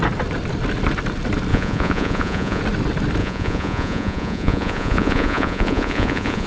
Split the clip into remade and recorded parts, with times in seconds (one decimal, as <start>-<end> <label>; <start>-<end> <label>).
0.0-1.5 recorded; 1.5-2.6 remade; 2.6-3.2 recorded; 3.2-6.5 remade